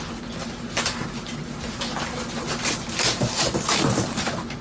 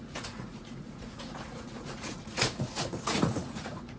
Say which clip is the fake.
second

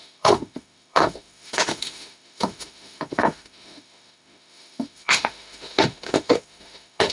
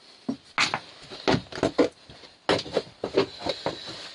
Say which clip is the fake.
first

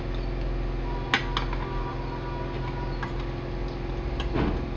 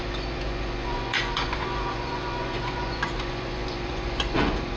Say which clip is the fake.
second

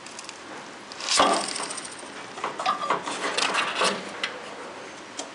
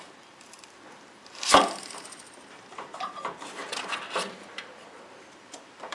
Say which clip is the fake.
second